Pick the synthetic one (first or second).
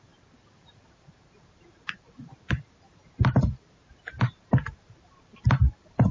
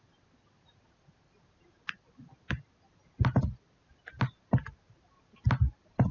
first